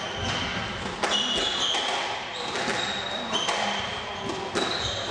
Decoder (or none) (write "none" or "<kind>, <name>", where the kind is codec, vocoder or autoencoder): none